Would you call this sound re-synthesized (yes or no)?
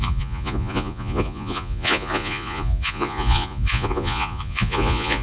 yes